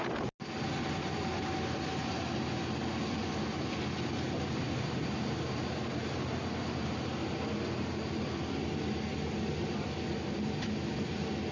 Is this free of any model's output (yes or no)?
yes